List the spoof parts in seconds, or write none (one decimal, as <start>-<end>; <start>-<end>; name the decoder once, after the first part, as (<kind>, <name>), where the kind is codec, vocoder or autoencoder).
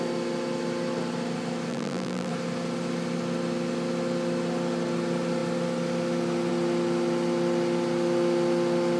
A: 1.7-2.3 (vocoder, BigVGAN v2)